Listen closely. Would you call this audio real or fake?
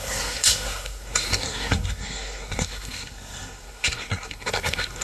fake